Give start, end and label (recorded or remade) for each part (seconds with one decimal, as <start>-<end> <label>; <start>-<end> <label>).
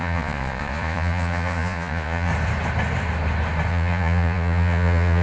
0.0-2.3 remade; 2.3-3.7 recorded; 3.7-5.2 remade